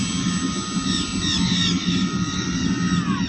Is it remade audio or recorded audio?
recorded